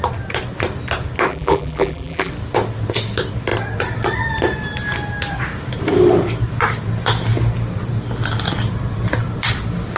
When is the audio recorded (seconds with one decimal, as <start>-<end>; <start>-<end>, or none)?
0.0-1.3; 2.3-10.0